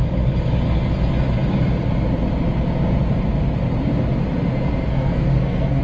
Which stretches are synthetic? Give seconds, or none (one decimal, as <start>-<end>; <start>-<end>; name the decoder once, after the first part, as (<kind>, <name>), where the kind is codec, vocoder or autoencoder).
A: 4.9-5.8 (codec, SNAC)